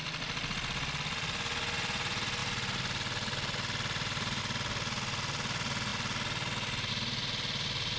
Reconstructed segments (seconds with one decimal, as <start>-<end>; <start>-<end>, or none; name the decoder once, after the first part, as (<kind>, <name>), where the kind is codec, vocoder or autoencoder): none